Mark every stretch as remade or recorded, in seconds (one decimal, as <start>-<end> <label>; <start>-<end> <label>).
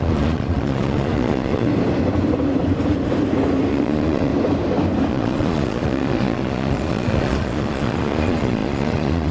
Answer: 0.0-1.7 remade; 1.7-3.7 recorded; 3.7-4.3 remade; 4.3-5.1 recorded; 5.1-9.3 remade